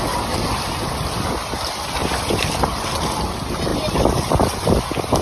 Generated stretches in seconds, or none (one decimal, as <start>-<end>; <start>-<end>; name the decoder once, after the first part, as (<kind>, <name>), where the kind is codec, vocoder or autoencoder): 2.0-2.6 (vocoder, BigVGAN v2); 3.7-5.2